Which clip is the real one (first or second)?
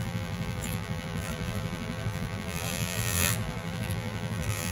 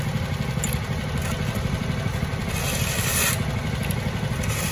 second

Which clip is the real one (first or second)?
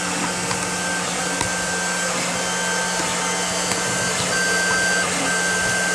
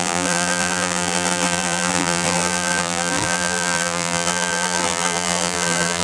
first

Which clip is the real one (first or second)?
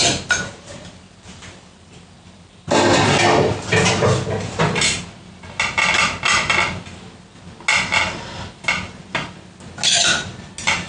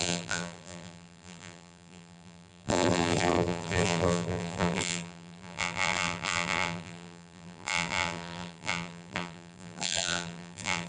first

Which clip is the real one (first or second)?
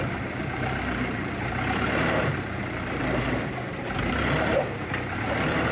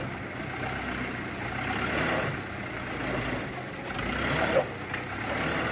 second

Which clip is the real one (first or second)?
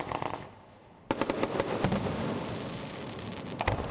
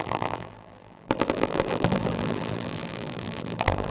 first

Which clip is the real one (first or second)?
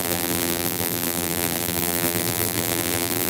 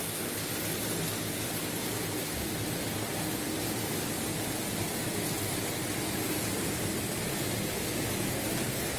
second